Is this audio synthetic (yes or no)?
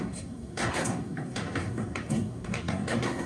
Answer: yes